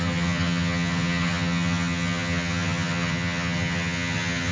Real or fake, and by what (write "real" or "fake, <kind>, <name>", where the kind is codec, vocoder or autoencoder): fake, vocoder, HiFi-GAN